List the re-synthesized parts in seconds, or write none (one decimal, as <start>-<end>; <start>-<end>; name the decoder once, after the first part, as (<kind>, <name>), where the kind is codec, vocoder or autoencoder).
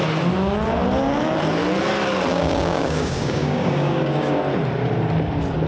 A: 2.3-4.4 (codec, DAC)